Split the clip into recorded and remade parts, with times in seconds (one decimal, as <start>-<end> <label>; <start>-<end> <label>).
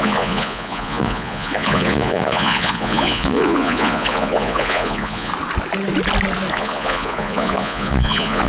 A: 0.0-5.3 remade; 5.3-6.5 recorded; 6.5-8.5 remade